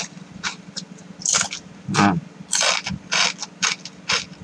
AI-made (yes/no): no